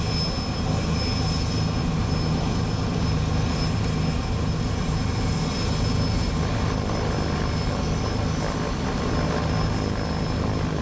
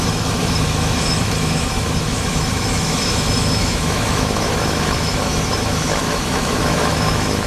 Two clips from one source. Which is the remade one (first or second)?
second